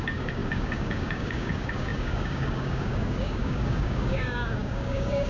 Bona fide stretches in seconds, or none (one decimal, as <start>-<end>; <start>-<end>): none